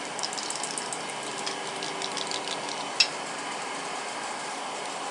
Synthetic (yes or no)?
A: no